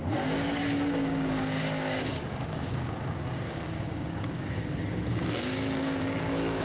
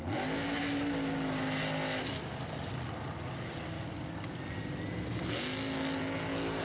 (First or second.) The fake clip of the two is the first